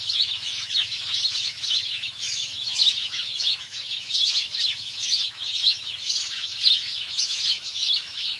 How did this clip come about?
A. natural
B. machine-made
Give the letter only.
B